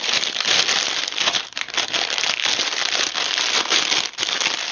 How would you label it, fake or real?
real